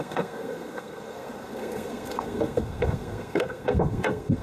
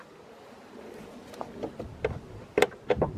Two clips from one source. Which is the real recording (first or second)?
second